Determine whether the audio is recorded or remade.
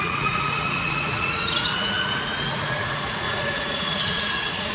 remade